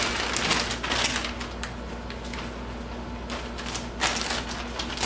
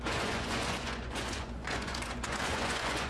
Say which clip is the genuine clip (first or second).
first